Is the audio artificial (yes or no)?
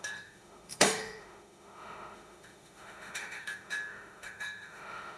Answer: yes